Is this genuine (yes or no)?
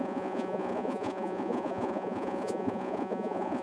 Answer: no